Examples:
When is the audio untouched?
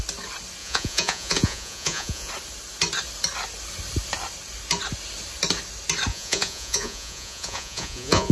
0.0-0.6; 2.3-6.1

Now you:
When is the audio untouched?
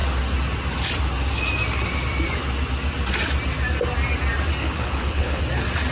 0.0-4.6; 5.4-5.9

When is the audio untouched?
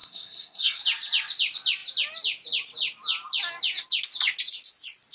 0.8-5.1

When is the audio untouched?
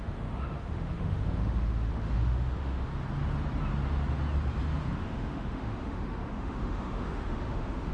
2.9-4.9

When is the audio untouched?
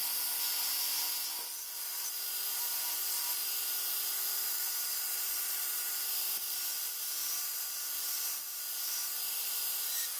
0.0-10.2